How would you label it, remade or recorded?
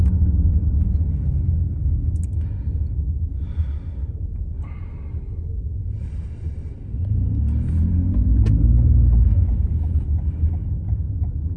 recorded